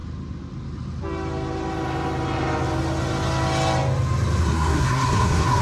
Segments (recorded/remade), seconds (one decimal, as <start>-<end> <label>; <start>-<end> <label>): 0.0-4.4 recorded; 4.4-5.6 remade